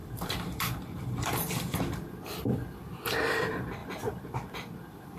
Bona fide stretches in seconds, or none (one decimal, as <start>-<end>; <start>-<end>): none